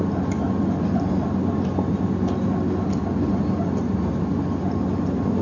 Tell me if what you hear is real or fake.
real